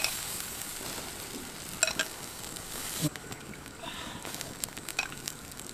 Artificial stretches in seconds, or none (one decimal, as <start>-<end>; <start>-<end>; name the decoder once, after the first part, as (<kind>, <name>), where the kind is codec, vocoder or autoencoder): 0.0-0.7 (codec, DAC); 1.9-5.7